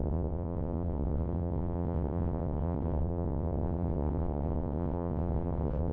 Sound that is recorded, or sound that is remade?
remade